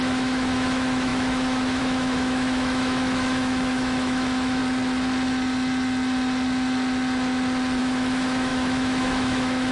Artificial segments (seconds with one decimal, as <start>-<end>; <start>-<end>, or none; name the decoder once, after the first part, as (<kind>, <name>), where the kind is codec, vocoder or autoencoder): 0.0-4.6 (autoencoder, DAC-VAE); 7.8-9.7